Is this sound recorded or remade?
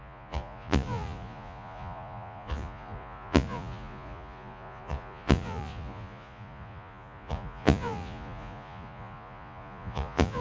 remade